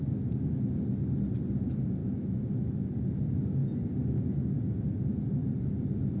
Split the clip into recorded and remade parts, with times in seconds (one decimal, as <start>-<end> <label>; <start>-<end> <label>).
0.0-2.0 recorded; 2.0-2.7 remade; 2.7-6.2 recorded